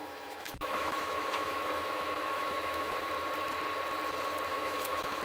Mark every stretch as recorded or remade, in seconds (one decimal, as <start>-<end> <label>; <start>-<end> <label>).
0.0-3.1 remade; 3.1-4.5 recorded; 4.5-5.2 remade